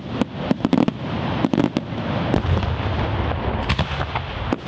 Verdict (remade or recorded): recorded